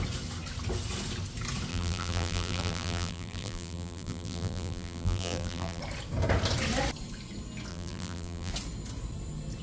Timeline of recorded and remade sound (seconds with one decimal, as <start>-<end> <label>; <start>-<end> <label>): 0.0-1.7 recorded; 1.7-5.8 remade; 5.8-7.7 recorded; 7.7-8.5 remade; 8.5-9.6 recorded